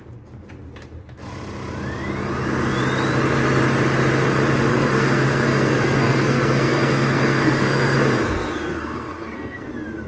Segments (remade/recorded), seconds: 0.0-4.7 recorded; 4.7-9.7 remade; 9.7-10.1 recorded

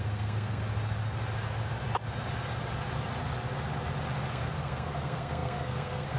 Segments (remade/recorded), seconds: 0.0-0.6 remade; 0.6-4.3 recorded; 4.3-6.2 remade

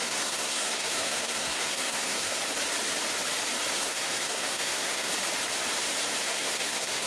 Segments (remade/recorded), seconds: 0.0-2.4 remade; 2.4-3.7 recorded; 3.7-5.1 remade; 5.1-6.2 recorded; 6.2-7.1 remade

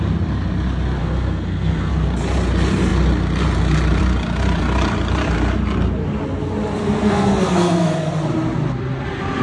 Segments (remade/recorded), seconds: 0.0-1.0 recorded; 1.0-1.9 remade; 1.9-6.8 recorded; 6.8-8.1 remade; 8.1-9.4 recorded

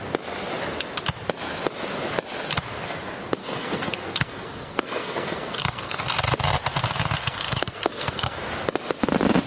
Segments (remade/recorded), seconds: 0.0-3.4 recorded; 3.4-6.0 remade; 6.0-7.2 recorded; 7.2-8.5 remade; 8.5-9.5 recorded

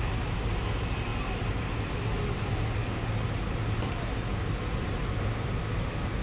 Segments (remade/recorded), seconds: 0.0-6.2 recorded